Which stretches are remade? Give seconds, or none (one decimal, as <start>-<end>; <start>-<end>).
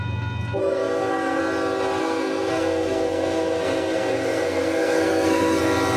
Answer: 0.6-1.4; 2.0-5.6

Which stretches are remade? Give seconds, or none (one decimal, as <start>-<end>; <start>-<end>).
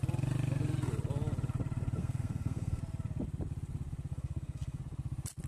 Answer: 2.0-2.8; 4.1-4.8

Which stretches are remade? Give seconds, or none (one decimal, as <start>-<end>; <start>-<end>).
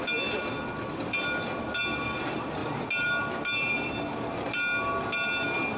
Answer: none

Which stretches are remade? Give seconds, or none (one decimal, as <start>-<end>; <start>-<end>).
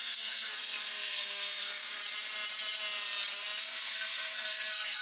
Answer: 0.0-2.0; 3.6-5.0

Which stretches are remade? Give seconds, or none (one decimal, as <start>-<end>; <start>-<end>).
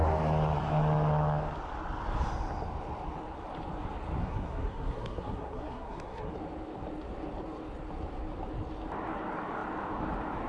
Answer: 4.2-6.3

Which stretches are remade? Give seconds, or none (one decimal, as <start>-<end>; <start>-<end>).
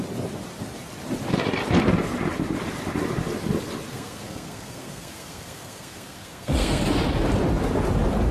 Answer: 3.9-6.8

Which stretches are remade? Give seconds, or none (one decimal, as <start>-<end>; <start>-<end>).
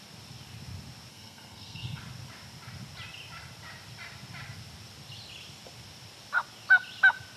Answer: 1.1-2.0